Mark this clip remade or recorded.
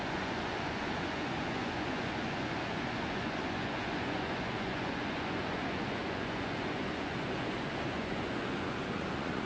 remade